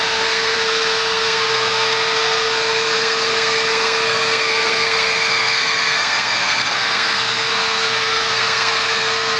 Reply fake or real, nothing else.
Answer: fake